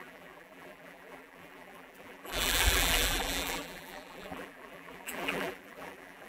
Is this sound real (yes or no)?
no